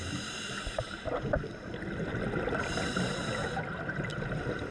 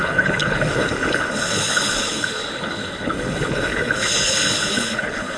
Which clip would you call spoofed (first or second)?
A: second